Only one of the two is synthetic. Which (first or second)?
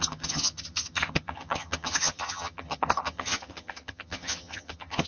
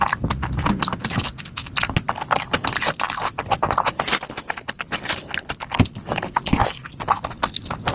first